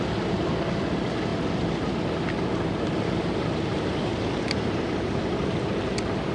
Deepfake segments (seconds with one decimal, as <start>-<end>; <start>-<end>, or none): 3.7-5.2